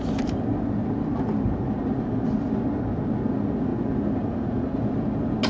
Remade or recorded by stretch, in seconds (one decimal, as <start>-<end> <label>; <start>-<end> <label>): 0.0-5.5 recorded